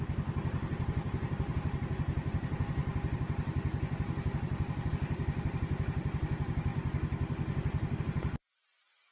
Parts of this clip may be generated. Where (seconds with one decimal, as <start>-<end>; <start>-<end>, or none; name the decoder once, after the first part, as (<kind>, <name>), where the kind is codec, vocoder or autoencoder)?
0.0-2.8 (vocoder, BigVGAN v2); 4.9-6.7; 8.0-9.1